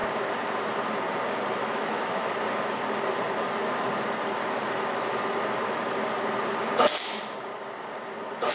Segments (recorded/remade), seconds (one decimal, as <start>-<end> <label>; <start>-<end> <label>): 0.0-1.6 recorded; 1.6-2.3 remade; 2.3-8.5 recorded